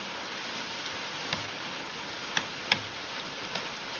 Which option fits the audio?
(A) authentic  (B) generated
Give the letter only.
A